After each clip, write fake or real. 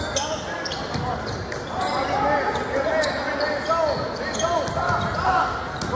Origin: real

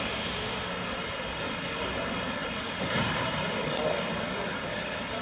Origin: real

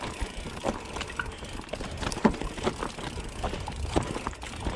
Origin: real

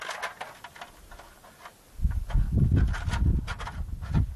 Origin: real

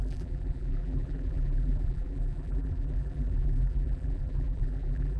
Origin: fake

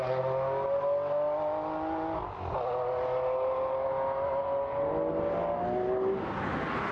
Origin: real